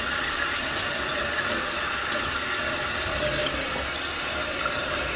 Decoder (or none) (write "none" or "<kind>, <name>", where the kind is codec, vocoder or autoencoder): none